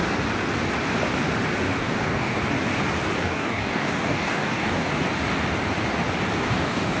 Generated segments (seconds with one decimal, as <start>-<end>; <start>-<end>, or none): 1.8-2.4; 3.2-4.9; 6.4-7.0